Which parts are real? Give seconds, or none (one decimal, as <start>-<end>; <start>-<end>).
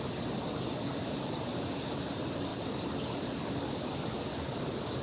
0.0-5.0